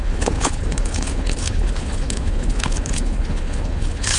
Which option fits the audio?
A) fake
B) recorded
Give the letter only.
A